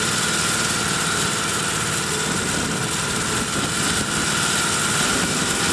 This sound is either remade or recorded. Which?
recorded